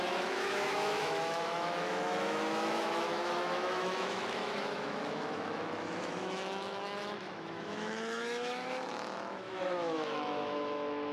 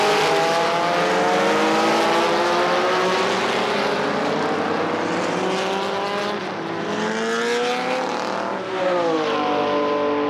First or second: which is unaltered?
second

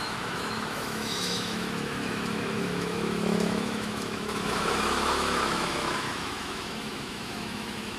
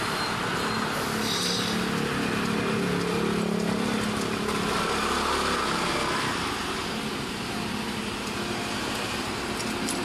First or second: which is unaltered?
second